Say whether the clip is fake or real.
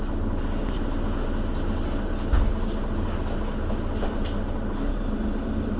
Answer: real